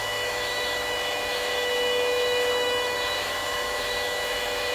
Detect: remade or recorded remade